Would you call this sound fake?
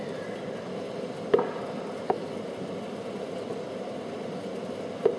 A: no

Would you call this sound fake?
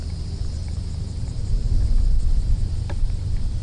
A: yes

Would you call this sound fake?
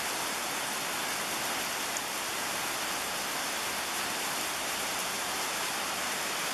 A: no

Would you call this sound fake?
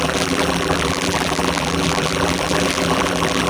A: yes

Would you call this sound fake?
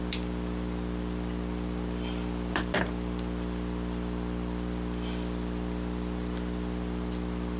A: yes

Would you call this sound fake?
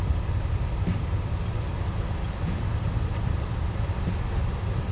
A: yes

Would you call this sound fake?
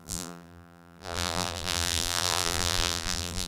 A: yes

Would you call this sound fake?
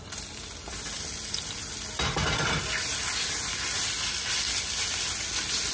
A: no